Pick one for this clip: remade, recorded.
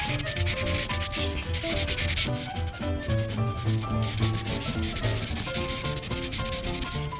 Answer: recorded